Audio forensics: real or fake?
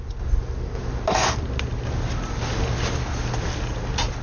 real